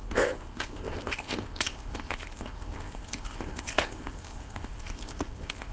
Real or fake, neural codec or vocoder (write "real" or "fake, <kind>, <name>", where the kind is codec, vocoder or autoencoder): fake, codec, ZipCodec